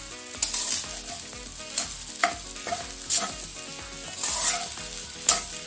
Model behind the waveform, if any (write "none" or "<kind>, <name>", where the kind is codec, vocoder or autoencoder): none